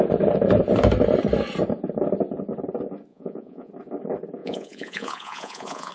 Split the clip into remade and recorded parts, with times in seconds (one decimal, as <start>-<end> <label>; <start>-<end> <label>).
0.0-3.1 recorded; 3.1-3.7 remade; 3.7-4.4 recorded; 4.4-5.9 remade